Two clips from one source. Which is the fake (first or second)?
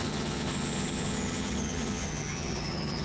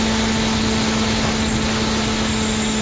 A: first